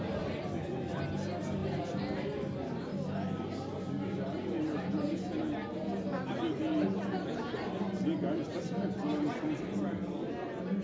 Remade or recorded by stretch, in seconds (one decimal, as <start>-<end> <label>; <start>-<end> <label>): 0.0-10.8 recorded